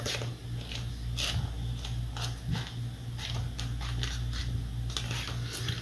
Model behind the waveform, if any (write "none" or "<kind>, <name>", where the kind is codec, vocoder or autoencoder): none